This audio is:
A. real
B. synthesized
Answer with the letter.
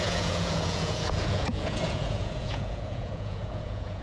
B